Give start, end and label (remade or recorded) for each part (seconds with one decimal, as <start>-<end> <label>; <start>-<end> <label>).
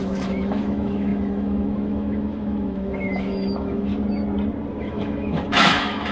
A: 0.0-3.9 remade; 3.9-4.8 recorded; 4.8-6.1 remade